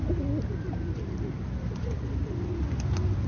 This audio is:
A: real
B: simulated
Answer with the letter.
A